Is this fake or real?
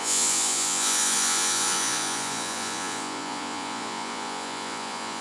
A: fake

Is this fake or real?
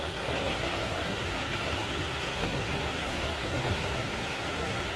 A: fake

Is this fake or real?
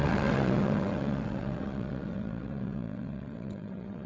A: fake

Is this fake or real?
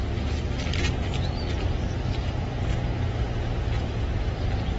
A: real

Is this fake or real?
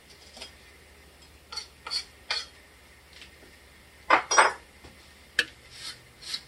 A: real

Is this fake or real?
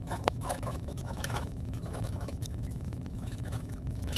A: fake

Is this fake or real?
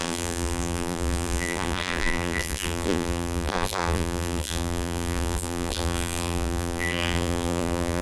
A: fake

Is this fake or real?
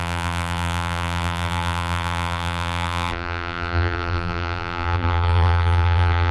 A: fake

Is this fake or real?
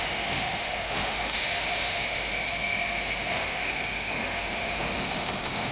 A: fake